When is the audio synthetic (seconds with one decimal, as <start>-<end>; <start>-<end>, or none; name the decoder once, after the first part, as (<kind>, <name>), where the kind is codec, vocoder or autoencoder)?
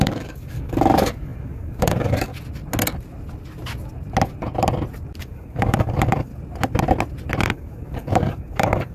0.0-2.3 (codec, DAC); 5.2-6.3; 7.4-8.9